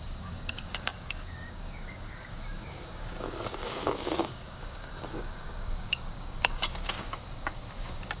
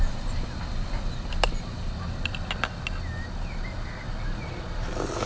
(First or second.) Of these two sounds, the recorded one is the second